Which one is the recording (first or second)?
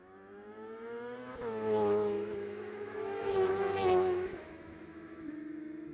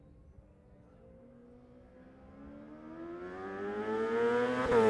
second